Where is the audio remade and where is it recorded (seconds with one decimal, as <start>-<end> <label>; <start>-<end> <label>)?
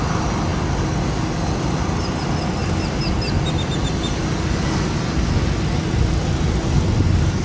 0.0-7.4 recorded